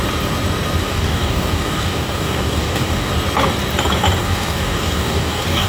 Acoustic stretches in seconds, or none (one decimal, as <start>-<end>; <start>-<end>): 0.0-0.8; 3.1-4.2